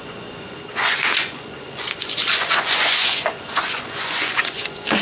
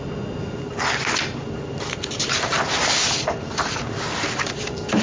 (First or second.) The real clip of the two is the second